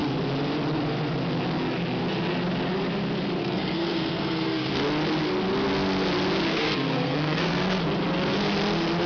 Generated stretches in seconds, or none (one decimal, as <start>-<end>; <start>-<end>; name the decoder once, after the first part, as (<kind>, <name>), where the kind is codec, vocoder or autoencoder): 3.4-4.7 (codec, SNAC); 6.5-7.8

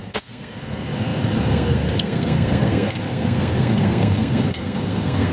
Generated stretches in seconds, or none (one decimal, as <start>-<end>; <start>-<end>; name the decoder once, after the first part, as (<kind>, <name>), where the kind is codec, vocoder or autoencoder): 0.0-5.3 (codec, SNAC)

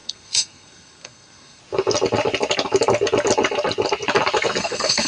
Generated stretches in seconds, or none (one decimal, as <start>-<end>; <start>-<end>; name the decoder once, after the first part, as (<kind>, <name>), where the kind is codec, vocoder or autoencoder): 0.0-1.6 (codec, SNAC); 4.6-5.1